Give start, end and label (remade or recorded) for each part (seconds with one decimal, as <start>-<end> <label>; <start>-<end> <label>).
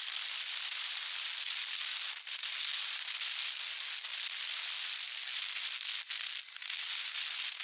0.0-7.6 recorded